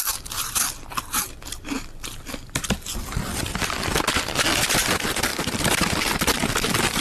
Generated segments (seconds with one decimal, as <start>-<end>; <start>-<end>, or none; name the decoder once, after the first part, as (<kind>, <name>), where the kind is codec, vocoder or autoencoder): none